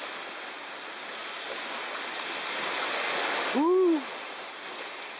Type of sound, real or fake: real